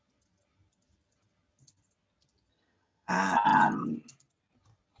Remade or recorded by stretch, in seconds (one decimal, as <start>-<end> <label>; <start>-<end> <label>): 0.0-2.5 recorded; 2.5-3.1 remade; 3.1-5.0 recorded